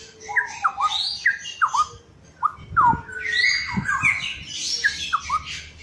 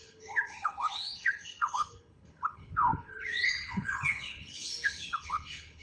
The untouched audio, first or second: first